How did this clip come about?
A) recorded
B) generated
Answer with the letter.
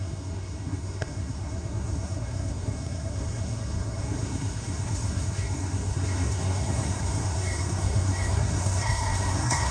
B